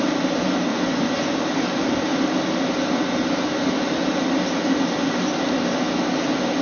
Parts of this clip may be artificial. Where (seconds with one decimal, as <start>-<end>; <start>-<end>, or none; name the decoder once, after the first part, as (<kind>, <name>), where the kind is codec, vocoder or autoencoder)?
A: 0.7-1.3 (vocoder, Vocos)